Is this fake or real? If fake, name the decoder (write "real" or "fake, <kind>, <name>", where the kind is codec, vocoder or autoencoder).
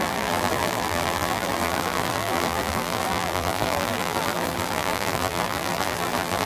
fake, vocoder, BigVGAN v2